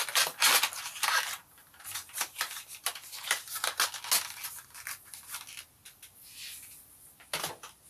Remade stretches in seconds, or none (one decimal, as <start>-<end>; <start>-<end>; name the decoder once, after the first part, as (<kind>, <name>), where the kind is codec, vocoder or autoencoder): 1.6-3.5 (vocoder, BigVGAN v2)